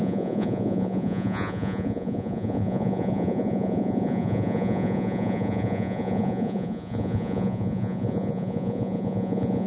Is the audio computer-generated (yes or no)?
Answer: yes